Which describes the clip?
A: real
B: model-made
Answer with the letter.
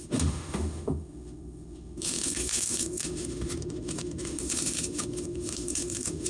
B